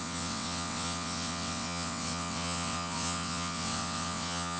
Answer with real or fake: fake